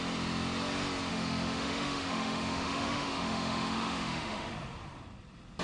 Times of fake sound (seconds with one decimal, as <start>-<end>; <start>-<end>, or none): 1.1-4.5